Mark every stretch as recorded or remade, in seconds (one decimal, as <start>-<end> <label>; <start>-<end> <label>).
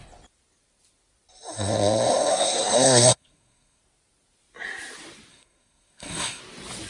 0.0-2.3 recorded; 2.3-3.8 remade; 3.8-5.3 recorded; 5.3-6.4 remade; 6.4-6.9 recorded